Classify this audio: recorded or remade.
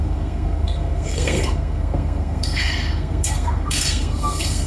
remade